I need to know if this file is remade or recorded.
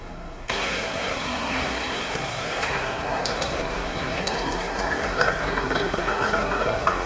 remade